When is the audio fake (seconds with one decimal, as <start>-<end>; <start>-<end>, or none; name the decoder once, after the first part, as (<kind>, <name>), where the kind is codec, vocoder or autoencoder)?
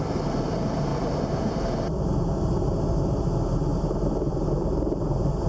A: 0.9-1.5 (vocoder, BigVGAN v2); 3.7-5.5